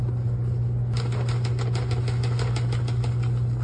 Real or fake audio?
real